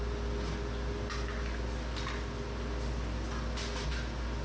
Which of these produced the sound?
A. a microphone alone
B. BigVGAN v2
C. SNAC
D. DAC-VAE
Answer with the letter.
A